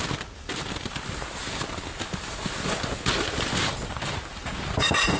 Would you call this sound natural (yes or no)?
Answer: yes